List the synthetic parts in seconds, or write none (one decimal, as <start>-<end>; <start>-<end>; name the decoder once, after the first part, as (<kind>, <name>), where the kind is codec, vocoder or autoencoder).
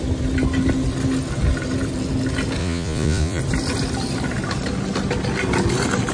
2.6-3.4 (vocoder, Vocos)